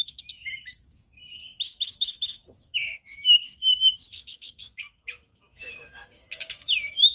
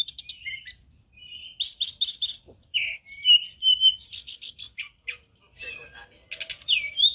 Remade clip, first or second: first